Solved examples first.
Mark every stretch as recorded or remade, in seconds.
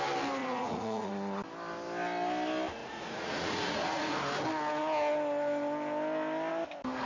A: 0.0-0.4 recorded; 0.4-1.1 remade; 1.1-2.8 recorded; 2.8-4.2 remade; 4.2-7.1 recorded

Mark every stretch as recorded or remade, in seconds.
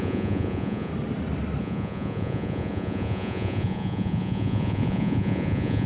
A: 0.0-0.9 remade; 0.9-1.6 recorded; 1.6-5.9 remade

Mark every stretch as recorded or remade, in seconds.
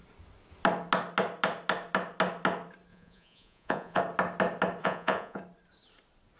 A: 0.0-2.9 recorded; 2.9-4.0 remade; 4.0-4.8 recorded; 4.8-5.4 remade; 5.4-6.4 recorded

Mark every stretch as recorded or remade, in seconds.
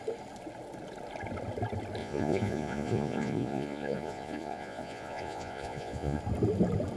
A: 0.0-2.0 recorded; 2.0-6.2 remade; 6.2-7.0 recorded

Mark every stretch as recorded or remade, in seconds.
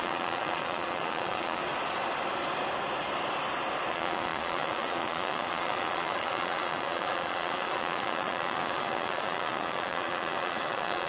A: 0.0-1.6 remade; 1.6-3.9 recorded; 3.9-11.1 remade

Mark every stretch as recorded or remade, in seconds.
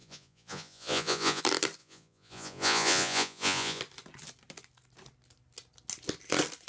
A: 0.0-1.4 remade; 1.4-1.8 recorded; 1.8-3.8 remade; 3.8-6.7 recorded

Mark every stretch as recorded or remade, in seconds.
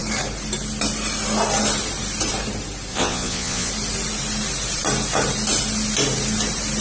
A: 0.0-2.9 recorded; 2.9-3.7 remade; 3.7-6.8 recorded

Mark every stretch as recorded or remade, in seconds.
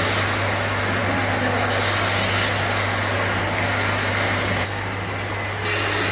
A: 0.0-6.1 recorded